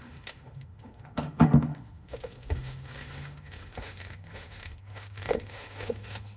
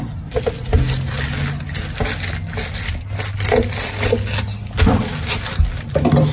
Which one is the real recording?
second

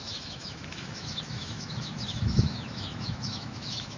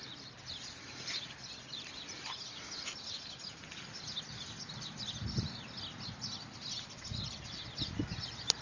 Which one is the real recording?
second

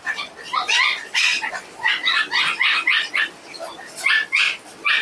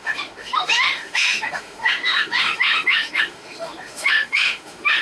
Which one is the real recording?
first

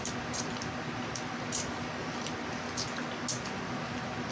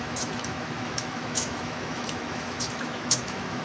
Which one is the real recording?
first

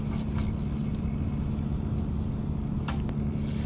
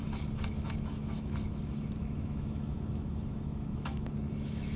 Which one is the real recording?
first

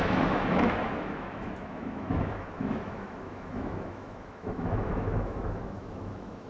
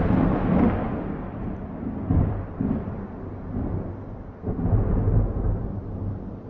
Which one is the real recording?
second